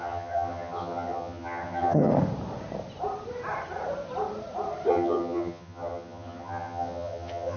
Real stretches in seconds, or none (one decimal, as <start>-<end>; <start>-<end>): 2.1-4.9

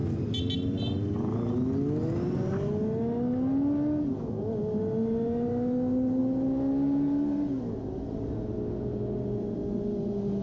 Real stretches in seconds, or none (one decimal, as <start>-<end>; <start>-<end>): 0.0-10.4

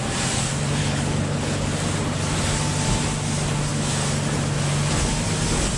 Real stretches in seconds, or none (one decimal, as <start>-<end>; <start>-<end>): 0.0-0.8; 1.7-5.8

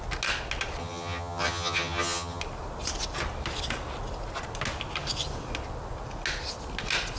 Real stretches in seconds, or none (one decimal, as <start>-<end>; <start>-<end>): 0.0-0.8; 2.4-7.2

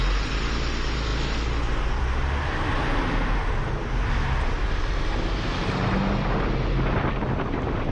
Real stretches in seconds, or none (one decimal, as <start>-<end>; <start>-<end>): 0.0-7.9